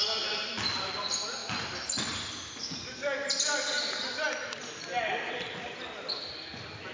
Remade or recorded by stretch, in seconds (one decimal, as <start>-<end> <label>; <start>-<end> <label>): 0.0-6.9 recorded